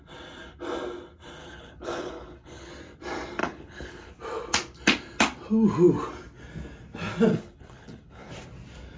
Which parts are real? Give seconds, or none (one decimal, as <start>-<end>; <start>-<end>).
0.0-1.4; 2.7-3.4; 4.1-7.3; 8.3-9.0